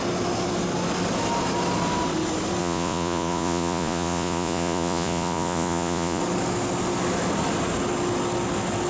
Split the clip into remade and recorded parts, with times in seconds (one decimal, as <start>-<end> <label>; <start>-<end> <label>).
0.0-2.6 recorded; 2.6-6.2 remade; 6.2-8.9 recorded